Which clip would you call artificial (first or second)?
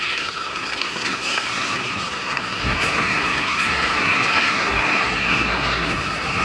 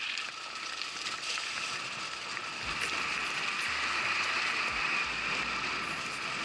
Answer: first